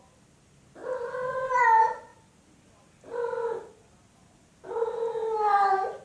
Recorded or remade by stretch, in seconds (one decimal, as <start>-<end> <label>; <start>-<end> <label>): 0.0-6.0 recorded